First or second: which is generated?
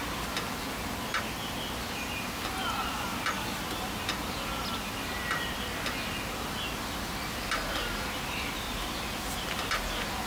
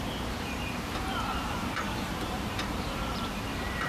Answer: second